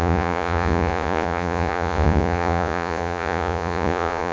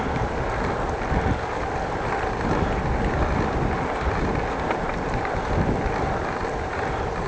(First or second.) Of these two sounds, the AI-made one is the first